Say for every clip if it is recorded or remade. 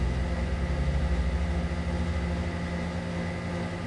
recorded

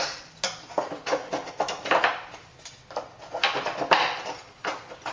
recorded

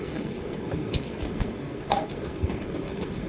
remade